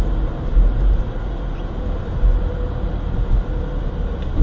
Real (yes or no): yes